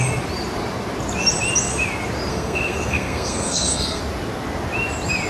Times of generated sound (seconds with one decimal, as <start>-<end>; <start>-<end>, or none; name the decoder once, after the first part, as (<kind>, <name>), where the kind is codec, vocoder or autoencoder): 2.3-4.0 (codec, SNAC)

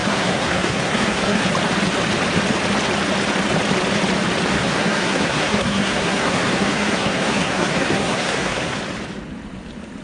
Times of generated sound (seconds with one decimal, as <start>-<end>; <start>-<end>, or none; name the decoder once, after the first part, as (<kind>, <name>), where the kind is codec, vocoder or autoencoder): 0.0-1.4 (codec, SNAC); 4.5-8.8